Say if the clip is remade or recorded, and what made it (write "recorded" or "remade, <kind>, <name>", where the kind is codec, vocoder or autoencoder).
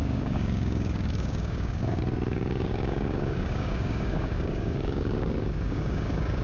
remade, codec, DAC